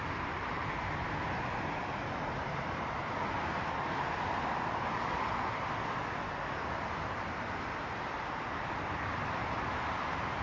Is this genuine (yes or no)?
yes